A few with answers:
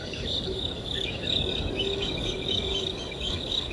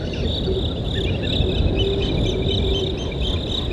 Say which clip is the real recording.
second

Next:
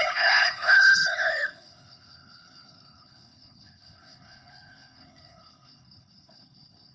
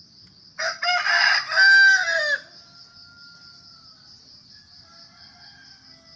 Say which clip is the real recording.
second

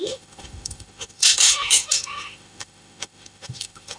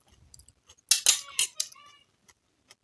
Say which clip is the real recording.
second